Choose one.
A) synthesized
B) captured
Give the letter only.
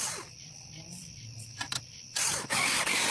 A